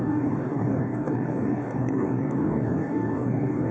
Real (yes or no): no